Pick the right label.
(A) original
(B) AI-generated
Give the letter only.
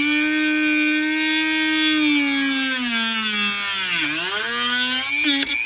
A